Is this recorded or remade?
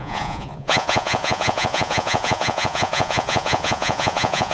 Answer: remade